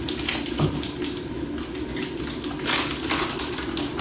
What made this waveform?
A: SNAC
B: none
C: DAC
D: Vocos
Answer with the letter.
B